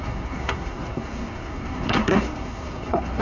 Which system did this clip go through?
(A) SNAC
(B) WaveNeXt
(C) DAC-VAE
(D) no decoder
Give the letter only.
A